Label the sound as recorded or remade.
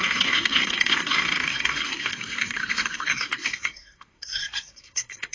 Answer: remade